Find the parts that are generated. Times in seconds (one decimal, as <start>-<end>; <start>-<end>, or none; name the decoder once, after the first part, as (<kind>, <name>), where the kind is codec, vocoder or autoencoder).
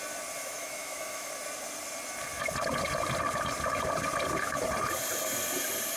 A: 0.4-1.3 (autoencoder, DAC-VAE)